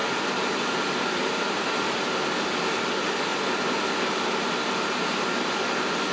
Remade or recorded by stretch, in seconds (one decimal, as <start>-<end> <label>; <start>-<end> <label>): 0.0-1.6 remade; 1.6-6.1 recorded